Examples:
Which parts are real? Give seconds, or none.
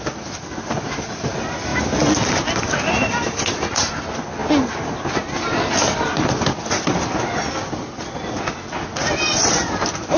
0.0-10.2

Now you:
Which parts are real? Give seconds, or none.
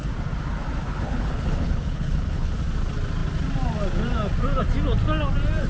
0.0-0.8; 2.5-5.7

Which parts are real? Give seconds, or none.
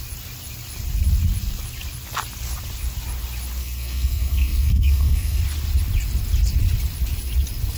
0.0-3.6; 5.4-7.8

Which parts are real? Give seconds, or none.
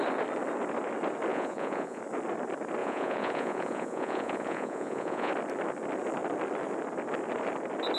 0.0-1.3; 2.0-2.8; 5.3-8.0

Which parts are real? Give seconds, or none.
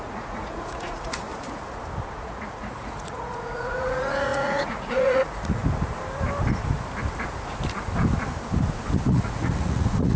1.3-2.1; 5.6-9.1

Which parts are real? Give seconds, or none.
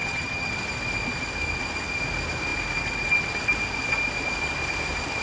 0.5-5.2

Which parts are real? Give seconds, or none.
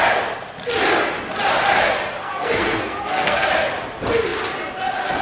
0.0-2.2; 3.5-5.2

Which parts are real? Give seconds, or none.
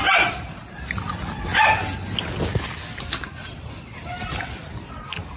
0.0-5.4